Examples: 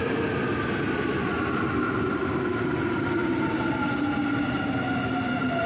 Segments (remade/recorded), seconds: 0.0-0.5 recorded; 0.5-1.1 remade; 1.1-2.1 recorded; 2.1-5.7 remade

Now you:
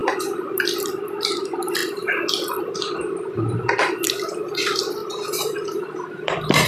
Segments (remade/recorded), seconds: 0.0-6.7 remade

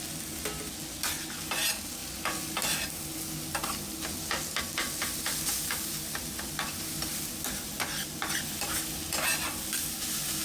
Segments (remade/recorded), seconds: 0.0-10.4 recorded

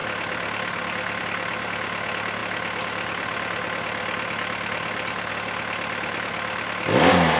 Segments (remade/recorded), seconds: 0.0-7.4 recorded

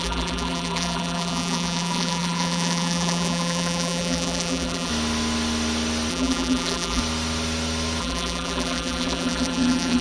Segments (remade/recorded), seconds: 0.0-4.9 remade; 4.9-6.1 recorded; 6.1-7.0 remade; 7.0-8.0 recorded; 8.0-10.0 remade